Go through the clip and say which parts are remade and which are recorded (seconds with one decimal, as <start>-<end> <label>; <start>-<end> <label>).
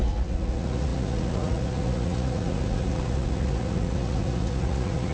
0.0-5.1 remade